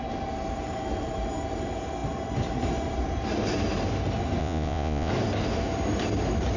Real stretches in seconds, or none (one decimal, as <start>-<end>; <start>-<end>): 0.0-4.4; 5.1-6.6